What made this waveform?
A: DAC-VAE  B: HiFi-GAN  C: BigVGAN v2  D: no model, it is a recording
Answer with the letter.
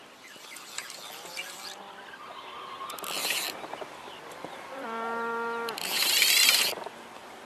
C